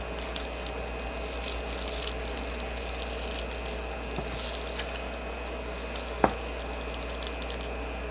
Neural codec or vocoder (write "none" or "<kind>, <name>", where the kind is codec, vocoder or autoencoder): none